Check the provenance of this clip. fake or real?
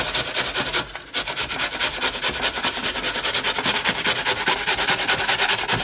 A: real